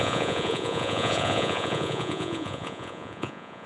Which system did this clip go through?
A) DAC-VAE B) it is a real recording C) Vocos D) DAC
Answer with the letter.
C